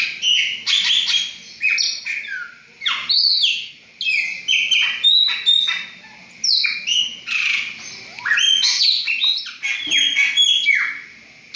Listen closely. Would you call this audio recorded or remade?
recorded